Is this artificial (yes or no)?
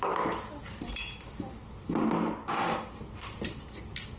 no